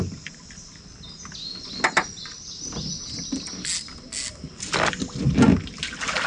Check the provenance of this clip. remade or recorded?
recorded